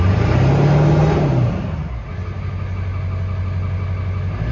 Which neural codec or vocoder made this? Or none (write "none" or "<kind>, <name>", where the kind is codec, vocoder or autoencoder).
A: none